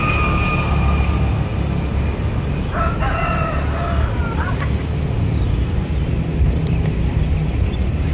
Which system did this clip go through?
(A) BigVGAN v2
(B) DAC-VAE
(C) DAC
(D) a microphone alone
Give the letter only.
D